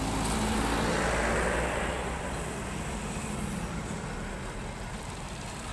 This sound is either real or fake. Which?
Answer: real